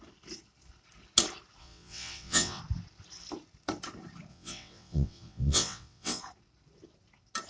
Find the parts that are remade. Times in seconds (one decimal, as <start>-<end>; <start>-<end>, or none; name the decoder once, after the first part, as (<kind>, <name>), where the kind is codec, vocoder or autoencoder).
1.6-2.6 (vocoder, WaveNeXt); 4.3-6.2